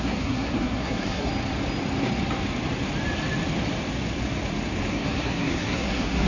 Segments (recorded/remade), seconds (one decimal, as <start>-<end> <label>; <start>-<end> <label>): 0.0-1.3 remade; 1.3-4.9 recorded; 4.9-6.3 remade